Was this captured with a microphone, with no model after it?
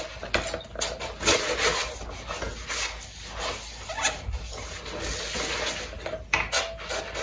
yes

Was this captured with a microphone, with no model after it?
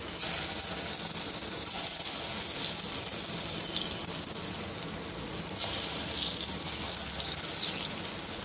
yes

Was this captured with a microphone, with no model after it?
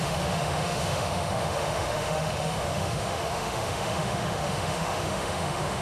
no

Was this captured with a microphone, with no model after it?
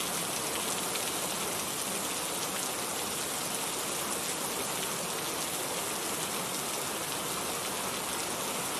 yes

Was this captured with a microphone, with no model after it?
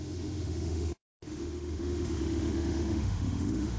no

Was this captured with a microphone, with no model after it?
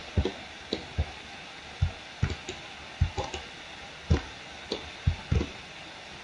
yes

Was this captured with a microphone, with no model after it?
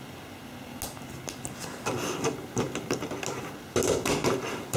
yes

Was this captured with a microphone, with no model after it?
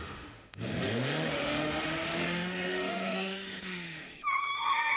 no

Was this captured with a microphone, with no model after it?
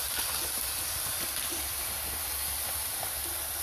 yes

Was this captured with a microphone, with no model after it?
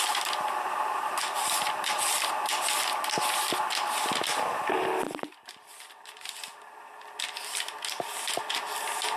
yes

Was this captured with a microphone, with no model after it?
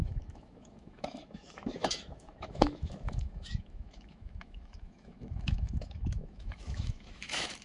no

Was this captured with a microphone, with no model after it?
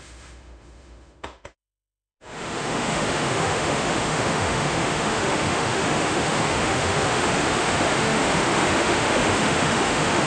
no